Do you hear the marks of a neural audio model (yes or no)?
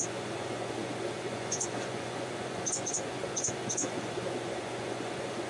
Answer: yes